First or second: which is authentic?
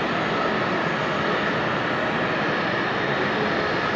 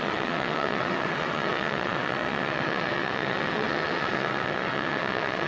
first